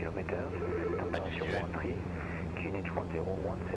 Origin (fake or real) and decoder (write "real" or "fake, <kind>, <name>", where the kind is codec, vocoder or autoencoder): fake, vocoder, Vocos